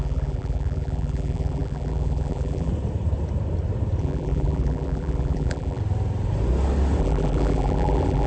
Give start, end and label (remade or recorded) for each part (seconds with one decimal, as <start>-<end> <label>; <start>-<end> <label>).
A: 0.0-2.7 remade; 2.7-4.0 recorded; 4.0-5.8 remade; 5.8-7.0 recorded; 7.0-8.3 remade